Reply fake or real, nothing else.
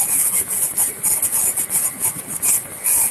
real